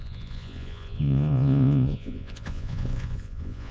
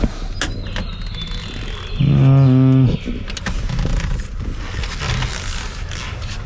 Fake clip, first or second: first